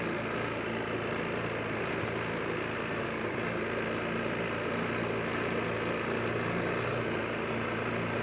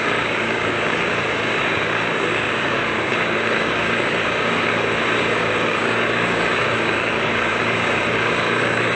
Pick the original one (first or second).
first